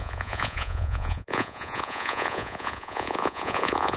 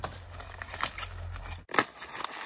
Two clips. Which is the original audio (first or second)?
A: second